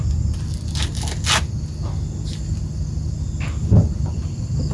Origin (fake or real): real